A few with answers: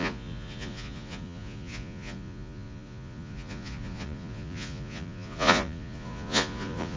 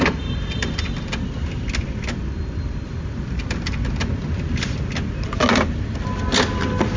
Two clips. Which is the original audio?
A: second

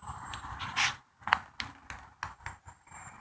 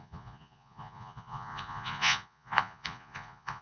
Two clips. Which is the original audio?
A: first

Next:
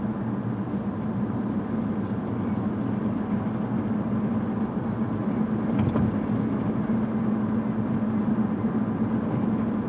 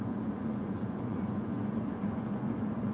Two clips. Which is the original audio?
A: first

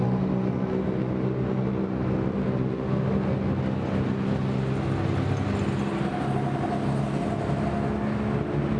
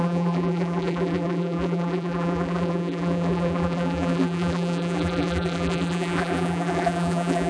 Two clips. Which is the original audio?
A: first